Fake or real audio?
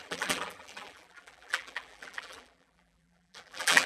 fake